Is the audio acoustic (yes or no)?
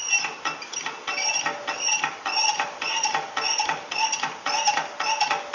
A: yes